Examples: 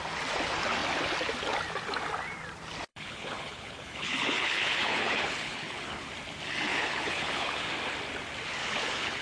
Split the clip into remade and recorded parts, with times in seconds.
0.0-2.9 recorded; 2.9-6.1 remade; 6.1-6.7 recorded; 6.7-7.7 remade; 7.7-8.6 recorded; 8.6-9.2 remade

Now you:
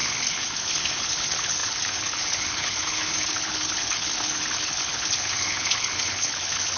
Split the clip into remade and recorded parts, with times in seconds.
0.0-6.8 remade

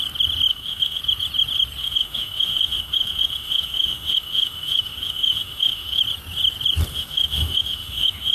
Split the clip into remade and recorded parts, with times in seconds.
0.0-0.5 recorded; 0.5-1.0 remade; 1.0-1.8 recorded; 1.8-6.0 remade; 6.0-6.9 recorded; 6.9-8.3 remade

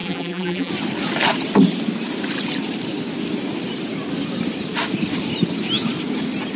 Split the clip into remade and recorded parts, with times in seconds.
0.0-0.7 remade; 0.7-6.6 recorded

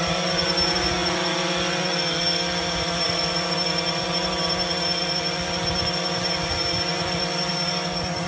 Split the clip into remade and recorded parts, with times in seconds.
0.0-8.3 recorded

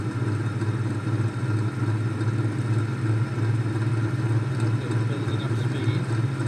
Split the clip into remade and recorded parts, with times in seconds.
0.0-5.3 recorded; 5.3-5.9 remade; 5.9-6.5 recorded

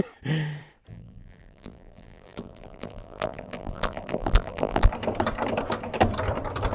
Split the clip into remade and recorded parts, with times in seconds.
0.0-0.9 recorded; 0.9-4.9 remade; 4.9-6.7 recorded

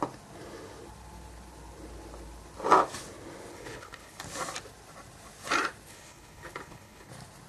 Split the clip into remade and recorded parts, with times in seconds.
0.0-3.5 recorded; 3.5-4.2 remade; 4.2-5.9 recorded; 5.9-7.1 remade; 7.1-7.5 recorded